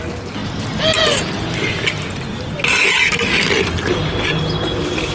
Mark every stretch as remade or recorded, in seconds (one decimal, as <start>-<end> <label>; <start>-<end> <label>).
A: 0.0-5.1 recorded